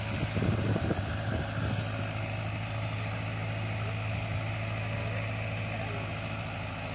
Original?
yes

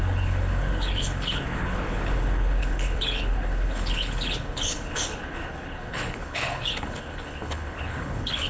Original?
no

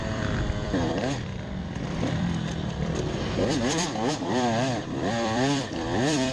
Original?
no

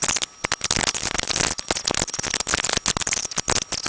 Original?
yes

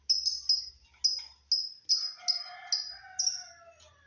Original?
yes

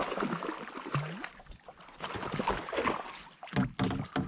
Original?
yes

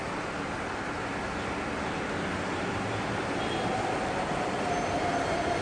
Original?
yes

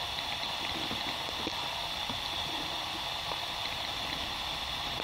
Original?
yes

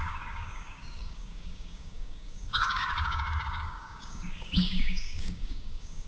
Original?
no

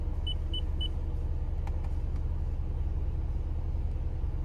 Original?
yes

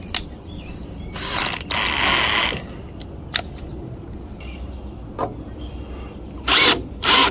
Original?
yes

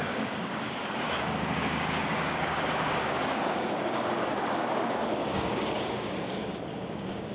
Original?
no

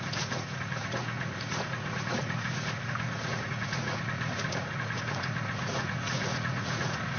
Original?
no